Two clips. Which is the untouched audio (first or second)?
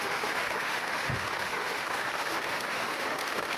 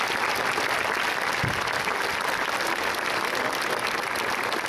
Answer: second